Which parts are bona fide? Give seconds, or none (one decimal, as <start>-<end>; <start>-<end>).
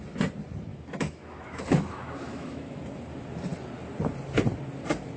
0.0-0.7; 2.8-5.2